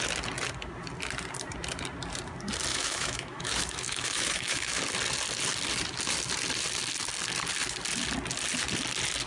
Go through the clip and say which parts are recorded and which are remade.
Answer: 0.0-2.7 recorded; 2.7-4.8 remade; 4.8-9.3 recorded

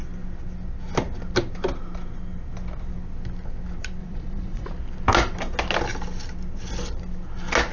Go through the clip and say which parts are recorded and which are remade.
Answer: 0.0-4.0 recorded; 4.0-4.7 remade; 4.7-7.7 recorded

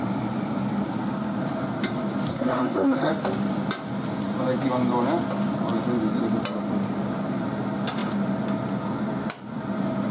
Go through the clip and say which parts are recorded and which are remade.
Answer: 0.0-2.3 recorded; 2.3-3.1 remade; 3.1-10.1 recorded

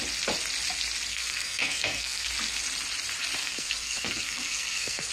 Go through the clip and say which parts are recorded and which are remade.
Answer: 0.0-1.1 recorded; 1.1-2.3 remade; 2.3-3.4 recorded; 3.4-5.1 remade